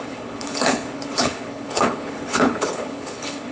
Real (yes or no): no